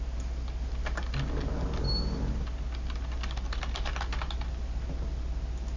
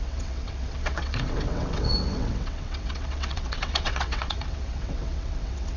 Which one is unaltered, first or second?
first